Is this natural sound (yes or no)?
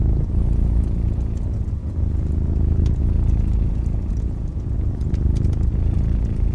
no